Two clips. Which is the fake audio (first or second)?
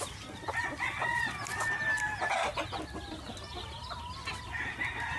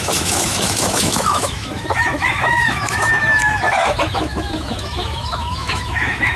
second